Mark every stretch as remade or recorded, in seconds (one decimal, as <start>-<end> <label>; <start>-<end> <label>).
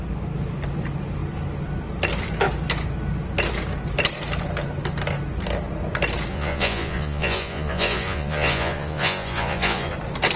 0.0-6.3 recorded; 6.3-9.9 remade; 9.9-10.4 recorded